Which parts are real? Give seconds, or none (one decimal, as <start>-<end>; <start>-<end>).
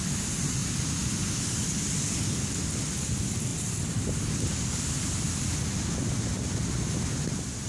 0.0-3.5; 4.2-7.7